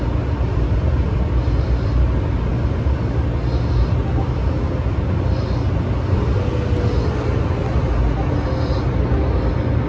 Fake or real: real